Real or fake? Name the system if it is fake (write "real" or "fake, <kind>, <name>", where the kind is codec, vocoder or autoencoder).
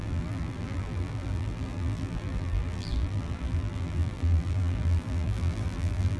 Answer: fake, vocoder, BigVGAN v2